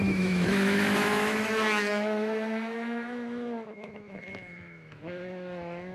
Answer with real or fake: fake